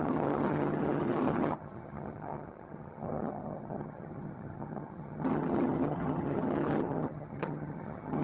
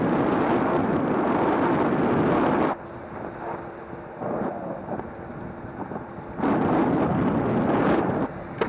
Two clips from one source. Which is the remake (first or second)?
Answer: first